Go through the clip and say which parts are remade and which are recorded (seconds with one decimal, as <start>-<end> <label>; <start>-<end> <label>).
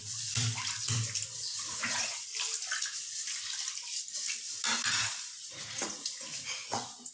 0.0-1.4 recorded; 1.4-2.3 remade; 2.3-4.9 recorded; 4.9-7.1 remade